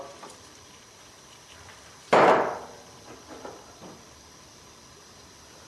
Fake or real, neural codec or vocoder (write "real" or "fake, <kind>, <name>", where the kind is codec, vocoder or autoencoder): real